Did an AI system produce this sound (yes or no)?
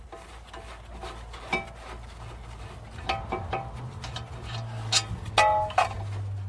no